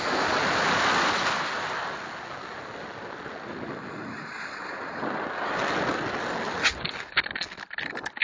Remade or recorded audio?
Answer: recorded